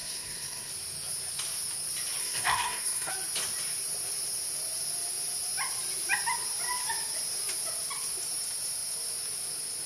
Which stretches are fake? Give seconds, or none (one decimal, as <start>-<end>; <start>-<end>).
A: 0.0-0.7; 2.2-3.1

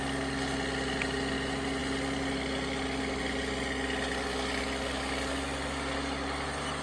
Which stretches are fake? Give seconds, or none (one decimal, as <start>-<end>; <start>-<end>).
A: none

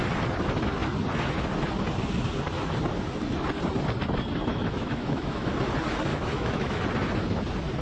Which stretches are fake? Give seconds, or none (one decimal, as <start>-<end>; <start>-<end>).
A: 4.5-5.5; 6.1-6.8